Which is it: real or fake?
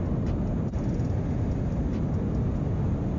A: real